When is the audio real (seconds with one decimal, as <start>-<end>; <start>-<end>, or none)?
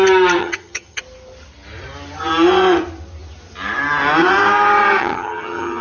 0.0-0.4; 1.0-5.0